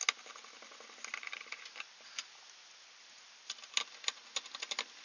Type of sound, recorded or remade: recorded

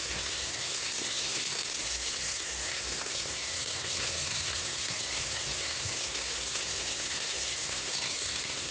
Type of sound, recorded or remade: remade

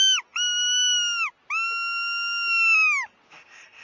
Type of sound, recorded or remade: recorded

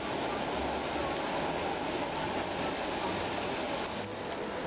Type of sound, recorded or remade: recorded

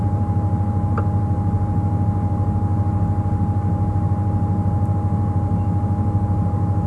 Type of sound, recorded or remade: recorded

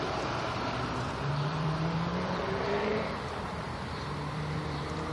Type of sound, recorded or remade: remade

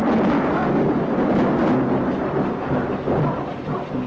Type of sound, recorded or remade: recorded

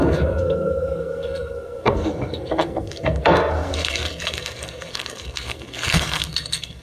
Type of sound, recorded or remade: remade